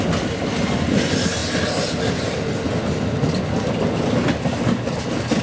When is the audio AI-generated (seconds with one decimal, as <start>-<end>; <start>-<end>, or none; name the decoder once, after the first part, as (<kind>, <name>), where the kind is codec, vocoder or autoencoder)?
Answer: none